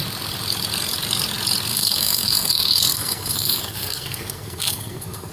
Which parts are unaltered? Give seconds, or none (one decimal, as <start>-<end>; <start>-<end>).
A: 0.0-1.7